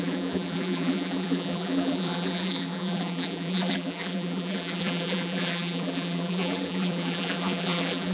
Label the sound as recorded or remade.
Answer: remade